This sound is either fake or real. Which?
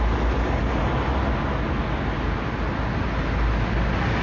real